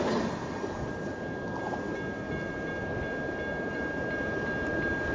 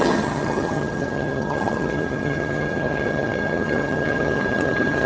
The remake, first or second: second